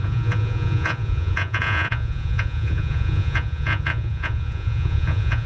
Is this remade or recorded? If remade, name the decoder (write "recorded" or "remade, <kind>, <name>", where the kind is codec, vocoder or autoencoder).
remade, vocoder, Vocos